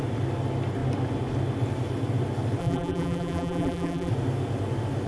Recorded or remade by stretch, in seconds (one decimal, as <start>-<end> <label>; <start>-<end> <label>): 0.0-2.6 recorded; 2.6-4.1 remade; 4.1-5.1 recorded